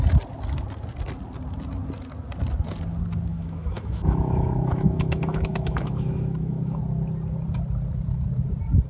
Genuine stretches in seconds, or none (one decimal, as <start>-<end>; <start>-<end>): 0.0-3.3; 6.8-8.9